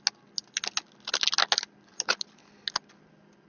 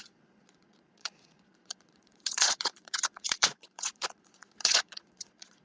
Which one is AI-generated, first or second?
second